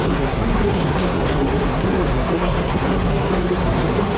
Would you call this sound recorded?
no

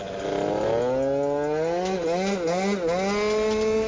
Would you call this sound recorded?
yes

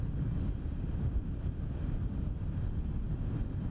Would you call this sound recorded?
yes